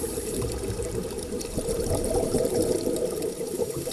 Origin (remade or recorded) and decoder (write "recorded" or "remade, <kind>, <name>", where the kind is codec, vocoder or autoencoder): remade, vocoder, BigVGAN v2